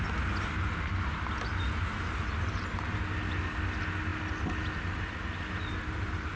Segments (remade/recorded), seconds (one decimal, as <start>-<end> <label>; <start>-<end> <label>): 0.0-6.4 recorded